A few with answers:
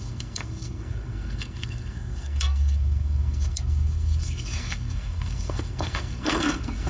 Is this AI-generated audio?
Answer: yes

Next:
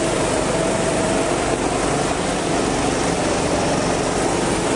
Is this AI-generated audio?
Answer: no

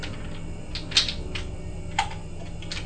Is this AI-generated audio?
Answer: no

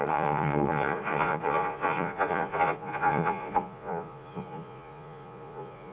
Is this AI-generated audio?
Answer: yes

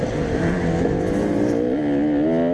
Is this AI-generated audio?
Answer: no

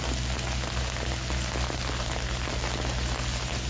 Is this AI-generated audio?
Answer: no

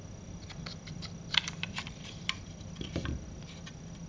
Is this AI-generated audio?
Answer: no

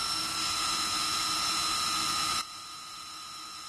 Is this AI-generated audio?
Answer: yes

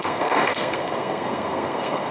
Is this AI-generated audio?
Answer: yes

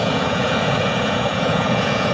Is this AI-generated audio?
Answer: yes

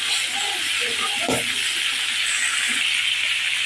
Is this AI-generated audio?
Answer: no